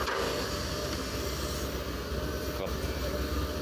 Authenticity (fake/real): real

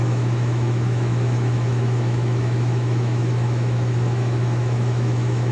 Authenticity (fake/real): fake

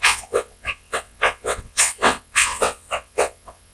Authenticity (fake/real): fake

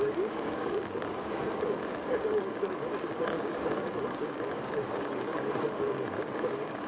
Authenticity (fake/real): fake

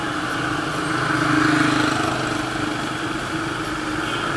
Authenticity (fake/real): real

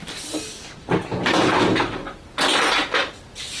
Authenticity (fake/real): real